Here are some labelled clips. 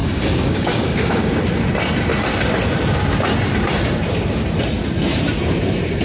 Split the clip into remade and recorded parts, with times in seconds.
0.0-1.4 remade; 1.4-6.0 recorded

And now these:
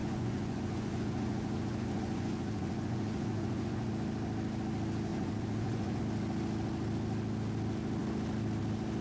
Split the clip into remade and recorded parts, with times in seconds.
0.0-3.9 remade; 3.9-5.1 recorded; 5.1-6.0 remade; 6.0-9.0 recorded

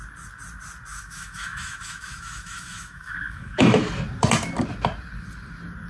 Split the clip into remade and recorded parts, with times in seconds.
0.0-0.9 recorded; 0.9-3.8 remade; 3.8-5.9 recorded

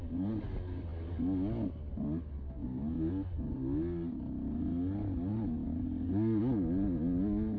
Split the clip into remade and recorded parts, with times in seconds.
0.0-7.6 recorded

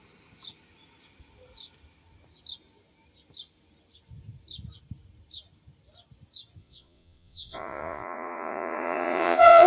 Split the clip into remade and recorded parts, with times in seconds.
0.0-6.6 recorded; 6.6-9.7 remade